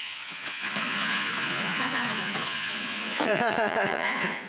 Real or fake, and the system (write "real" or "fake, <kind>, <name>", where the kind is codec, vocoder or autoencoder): fake, vocoder, Vocos